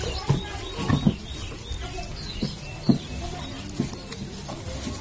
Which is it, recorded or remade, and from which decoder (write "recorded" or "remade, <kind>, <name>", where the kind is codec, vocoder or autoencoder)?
recorded